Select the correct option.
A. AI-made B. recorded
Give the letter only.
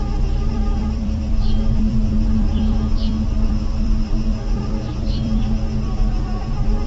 A